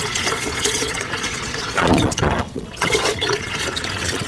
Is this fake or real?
fake